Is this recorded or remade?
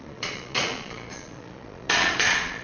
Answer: remade